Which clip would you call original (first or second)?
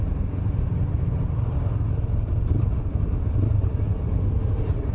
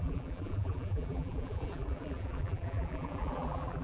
first